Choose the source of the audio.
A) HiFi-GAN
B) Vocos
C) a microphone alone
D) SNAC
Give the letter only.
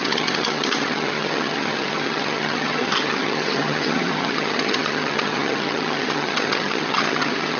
A